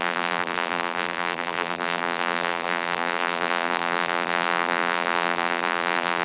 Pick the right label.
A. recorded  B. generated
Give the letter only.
B